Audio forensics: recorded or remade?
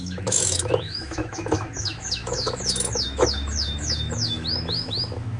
remade